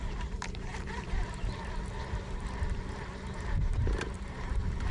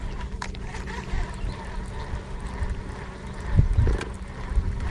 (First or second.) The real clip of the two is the second